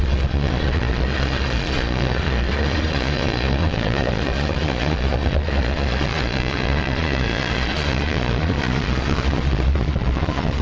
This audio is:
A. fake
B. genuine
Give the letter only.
A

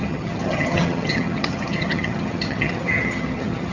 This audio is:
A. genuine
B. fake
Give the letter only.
B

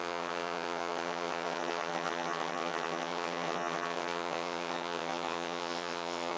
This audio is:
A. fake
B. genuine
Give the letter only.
A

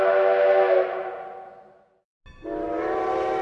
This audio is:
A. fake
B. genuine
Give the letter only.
B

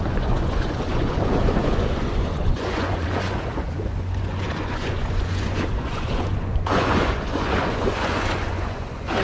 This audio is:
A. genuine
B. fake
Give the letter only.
B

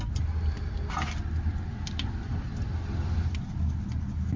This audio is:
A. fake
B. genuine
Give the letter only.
B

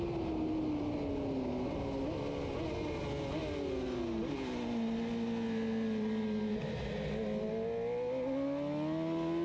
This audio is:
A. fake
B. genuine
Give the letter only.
B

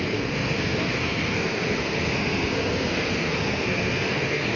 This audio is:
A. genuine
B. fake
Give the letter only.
B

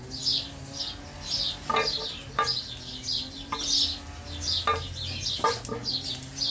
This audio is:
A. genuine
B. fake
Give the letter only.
A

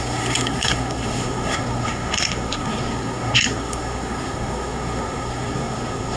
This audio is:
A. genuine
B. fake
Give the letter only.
B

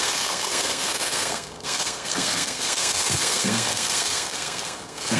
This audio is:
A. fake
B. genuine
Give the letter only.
A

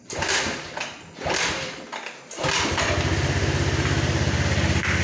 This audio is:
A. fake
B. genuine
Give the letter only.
B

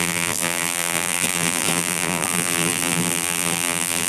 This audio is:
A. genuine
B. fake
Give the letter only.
B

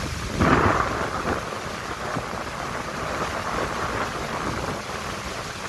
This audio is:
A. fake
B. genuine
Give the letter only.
B